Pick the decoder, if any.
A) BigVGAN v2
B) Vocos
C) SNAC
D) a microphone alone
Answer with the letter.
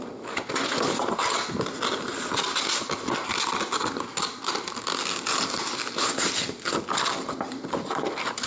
D